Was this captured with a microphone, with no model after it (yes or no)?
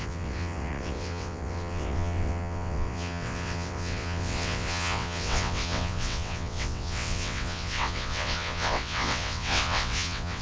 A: no